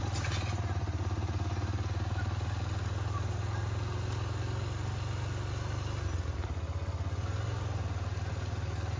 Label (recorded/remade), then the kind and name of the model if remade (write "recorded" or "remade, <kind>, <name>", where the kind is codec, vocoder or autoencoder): recorded